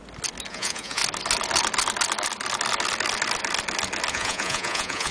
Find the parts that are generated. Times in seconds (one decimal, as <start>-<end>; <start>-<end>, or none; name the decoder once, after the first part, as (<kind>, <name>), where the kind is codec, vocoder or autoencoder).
0.5-1.0 (vocoder, Vocos); 4.1-5.1